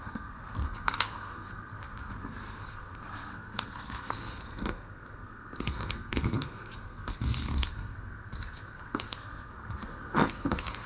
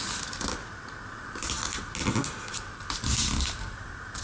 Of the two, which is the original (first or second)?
second